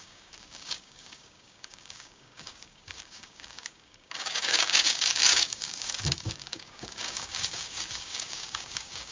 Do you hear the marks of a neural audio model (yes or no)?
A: yes